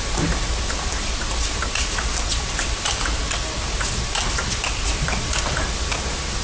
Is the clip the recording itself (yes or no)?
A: yes